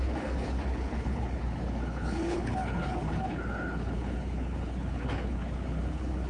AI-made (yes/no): yes